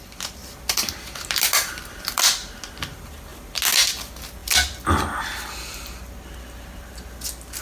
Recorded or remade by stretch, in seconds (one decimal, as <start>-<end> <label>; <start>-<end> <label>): 0.0-7.6 recorded